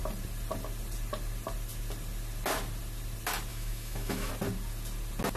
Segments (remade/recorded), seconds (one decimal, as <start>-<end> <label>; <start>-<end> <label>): 0.0-3.5 recorded; 3.5-4.3 remade; 4.3-5.4 recorded